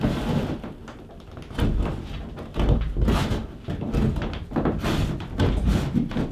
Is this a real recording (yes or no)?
yes